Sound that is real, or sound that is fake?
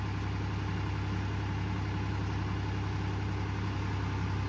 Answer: real